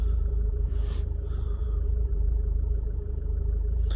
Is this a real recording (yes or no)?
no